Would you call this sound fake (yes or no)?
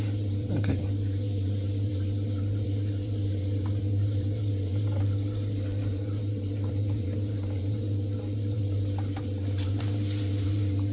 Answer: yes